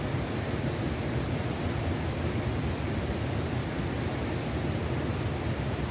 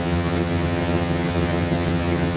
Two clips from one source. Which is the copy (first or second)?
second